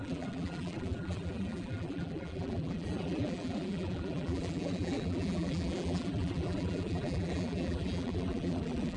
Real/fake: fake